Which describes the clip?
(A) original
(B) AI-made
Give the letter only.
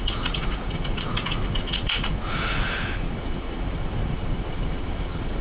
B